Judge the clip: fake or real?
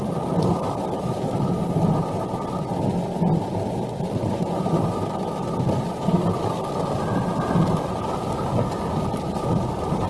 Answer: real